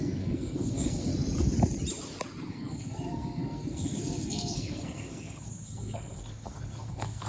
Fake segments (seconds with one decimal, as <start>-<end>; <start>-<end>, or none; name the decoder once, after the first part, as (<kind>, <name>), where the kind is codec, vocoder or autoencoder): 0.0-1.1 (codec, SNAC); 2.5-7.3